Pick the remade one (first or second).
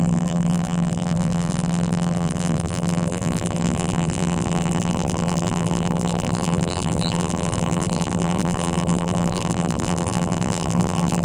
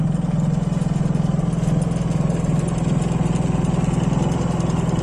first